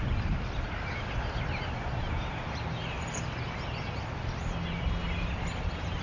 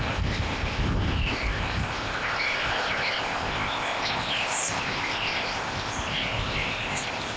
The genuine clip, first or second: first